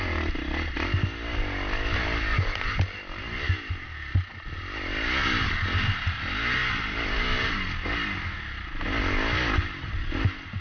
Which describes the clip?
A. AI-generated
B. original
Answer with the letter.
B